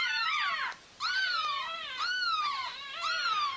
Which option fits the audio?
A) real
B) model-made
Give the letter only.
B